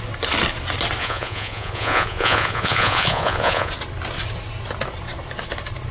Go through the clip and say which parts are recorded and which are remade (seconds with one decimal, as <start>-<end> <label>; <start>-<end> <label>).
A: 0.0-1.0 recorded; 1.0-3.7 remade; 3.7-5.9 recorded